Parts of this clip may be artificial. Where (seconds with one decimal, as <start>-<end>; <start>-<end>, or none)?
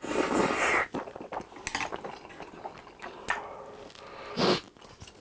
none